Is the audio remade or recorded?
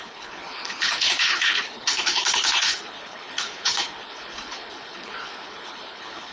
remade